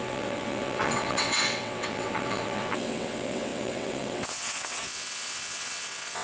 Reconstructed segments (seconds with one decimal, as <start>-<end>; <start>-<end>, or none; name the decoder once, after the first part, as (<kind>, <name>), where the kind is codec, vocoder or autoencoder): 0.0-6.2 (vocoder, WaveNeXt)